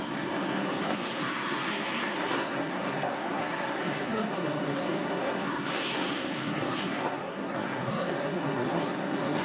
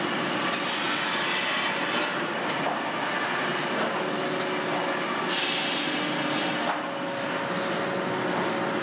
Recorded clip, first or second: second